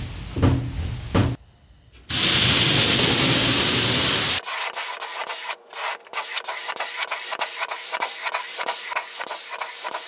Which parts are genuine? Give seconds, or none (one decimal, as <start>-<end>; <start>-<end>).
0.0-10.1